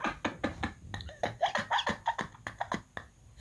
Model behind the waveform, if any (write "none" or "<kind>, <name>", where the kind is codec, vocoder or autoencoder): none